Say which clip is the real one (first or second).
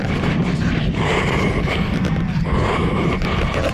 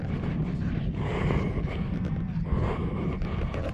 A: second